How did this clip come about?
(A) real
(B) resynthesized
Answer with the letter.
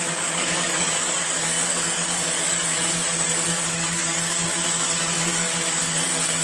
B